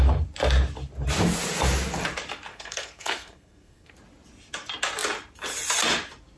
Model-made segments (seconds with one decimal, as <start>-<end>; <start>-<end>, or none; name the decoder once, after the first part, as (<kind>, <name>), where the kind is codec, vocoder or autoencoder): 2.5-3.9 (codec, SNAC)